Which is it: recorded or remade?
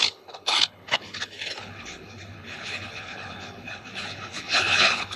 remade